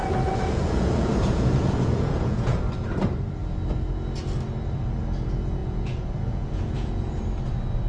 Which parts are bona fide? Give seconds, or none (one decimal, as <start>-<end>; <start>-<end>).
2.6-5.6; 7.2-7.9